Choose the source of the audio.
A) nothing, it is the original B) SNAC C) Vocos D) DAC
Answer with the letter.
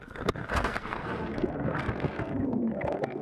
B